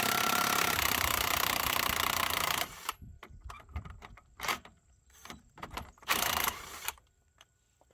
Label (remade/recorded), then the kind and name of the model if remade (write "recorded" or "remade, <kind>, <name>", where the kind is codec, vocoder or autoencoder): remade, vocoder, BigVGAN v2